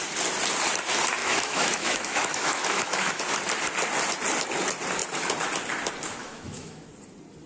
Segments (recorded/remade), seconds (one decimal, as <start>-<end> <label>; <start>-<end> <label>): 0.0-1.2 recorded; 1.2-3.2 remade; 3.2-6.2 recorded; 6.2-6.9 remade; 6.9-7.5 recorded